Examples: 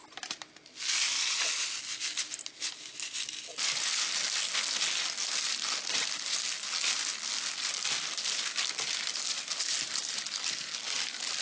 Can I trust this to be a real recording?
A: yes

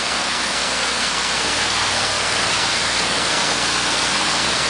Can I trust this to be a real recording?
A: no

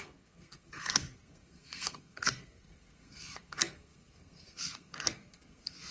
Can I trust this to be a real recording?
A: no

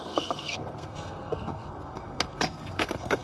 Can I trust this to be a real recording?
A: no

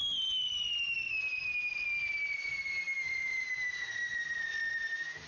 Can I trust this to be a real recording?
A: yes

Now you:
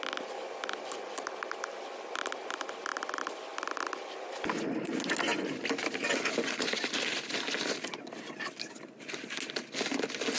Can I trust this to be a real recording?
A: yes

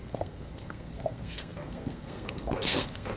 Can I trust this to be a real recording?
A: no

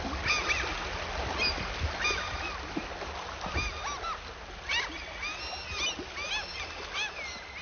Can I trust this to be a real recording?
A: yes